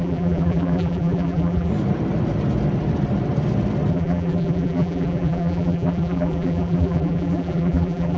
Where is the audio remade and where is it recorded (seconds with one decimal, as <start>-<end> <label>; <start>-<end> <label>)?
0.0-1.7 remade; 1.7-3.9 recorded; 3.9-8.2 remade